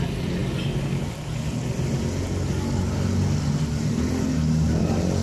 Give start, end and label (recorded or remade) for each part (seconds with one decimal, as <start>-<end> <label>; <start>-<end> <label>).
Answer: 0.0-5.2 recorded